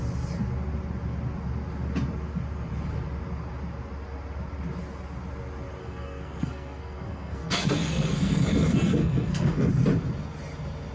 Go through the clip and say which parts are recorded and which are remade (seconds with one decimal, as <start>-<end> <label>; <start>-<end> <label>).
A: 0.0-5.8 recorded; 5.8-9.7 remade; 9.7-10.9 recorded